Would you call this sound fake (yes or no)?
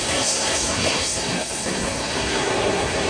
yes